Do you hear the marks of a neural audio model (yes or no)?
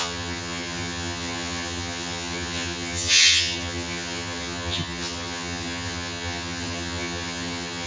yes